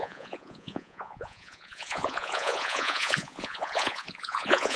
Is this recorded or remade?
remade